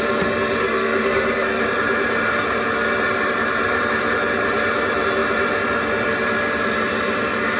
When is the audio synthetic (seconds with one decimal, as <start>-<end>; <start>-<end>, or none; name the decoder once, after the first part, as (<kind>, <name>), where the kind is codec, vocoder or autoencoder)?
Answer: 0.6-1.6 (codec, SNAC)